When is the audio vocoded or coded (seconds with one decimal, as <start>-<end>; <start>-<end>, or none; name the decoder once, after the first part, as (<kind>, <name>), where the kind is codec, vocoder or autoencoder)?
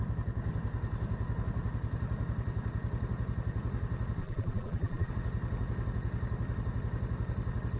4.2-5.1 (vocoder, BigVGAN v2)